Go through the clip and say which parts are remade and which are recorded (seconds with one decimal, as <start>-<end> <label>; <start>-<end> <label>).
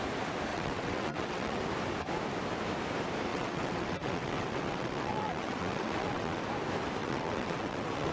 0.0-0.5 recorded; 0.5-1.6 remade; 1.6-3.3 recorded; 3.3-6.4 remade; 6.4-7.0 recorded; 7.0-8.1 remade